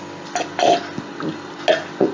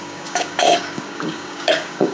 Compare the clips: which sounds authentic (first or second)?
first